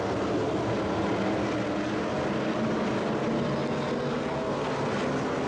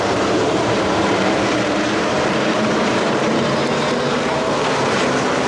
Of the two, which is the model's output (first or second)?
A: second